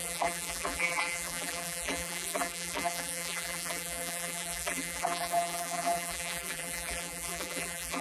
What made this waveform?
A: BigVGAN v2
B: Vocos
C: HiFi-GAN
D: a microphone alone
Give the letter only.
A